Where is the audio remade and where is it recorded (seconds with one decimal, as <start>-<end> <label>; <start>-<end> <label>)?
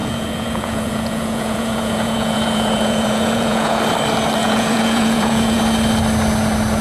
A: 0.0-3.8 remade; 3.8-4.4 recorded; 4.4-5.6 remade; 5.6-6.8 recorded